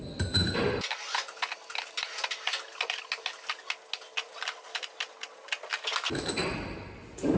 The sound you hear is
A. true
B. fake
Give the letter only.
A